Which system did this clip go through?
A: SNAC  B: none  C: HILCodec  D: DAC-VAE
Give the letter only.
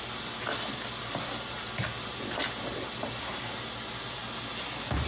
B